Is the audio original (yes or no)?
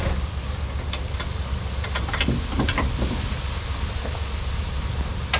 yes